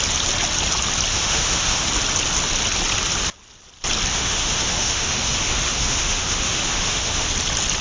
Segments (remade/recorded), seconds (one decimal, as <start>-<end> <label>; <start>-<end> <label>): 0.0-1.1 recorded; 1.1-1.9 remade; 1.9-4.1 recorded; 4.1-7.3 remade; 7.3-7.8 recorded